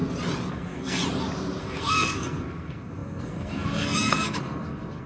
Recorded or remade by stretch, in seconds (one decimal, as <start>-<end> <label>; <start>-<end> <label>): 0.0-0.5 recorded; 0.5-1.0 remade; 1.0-1.6 recorded; 1.6-5.1 remade